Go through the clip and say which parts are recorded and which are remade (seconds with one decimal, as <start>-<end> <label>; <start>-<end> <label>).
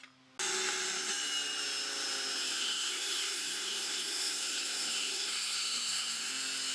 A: 0.0-2.6 recorded; 2.6-6.3 remade; 6.3-6.7 recorded